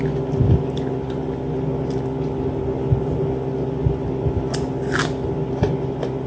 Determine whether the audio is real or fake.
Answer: real